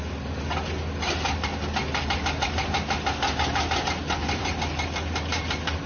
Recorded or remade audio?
recorded